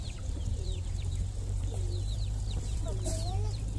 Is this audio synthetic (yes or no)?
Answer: yes